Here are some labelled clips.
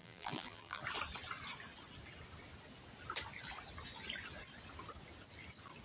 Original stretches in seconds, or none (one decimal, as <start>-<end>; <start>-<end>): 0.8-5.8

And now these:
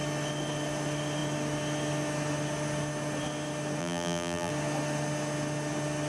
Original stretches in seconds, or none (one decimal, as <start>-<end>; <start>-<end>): 0.0-3.8; 4.5-6.1

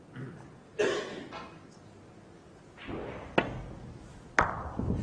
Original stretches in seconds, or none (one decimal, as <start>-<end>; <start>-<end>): 0.0-5.0